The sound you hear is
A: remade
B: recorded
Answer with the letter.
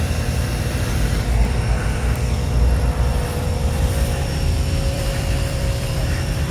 A